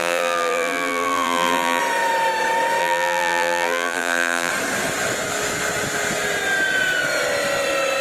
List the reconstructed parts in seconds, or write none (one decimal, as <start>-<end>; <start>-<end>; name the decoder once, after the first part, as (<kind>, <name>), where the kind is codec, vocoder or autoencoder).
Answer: 0.0-1.8 (vocoder, BigVGAN v2); 2.8-4.5